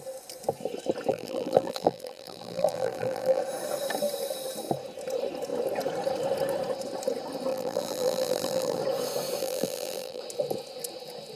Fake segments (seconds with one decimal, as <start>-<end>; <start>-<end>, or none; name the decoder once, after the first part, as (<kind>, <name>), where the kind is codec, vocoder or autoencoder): 1.1-3.4 (vocoder, BigVGAN v2); 7.5-8.8; 9.4-10.2